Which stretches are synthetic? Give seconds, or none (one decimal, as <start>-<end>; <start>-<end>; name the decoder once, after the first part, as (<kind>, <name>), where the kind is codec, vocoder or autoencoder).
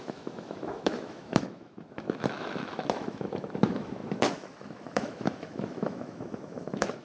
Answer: 0.0-7.0 (autoencoder, DAC-VAE)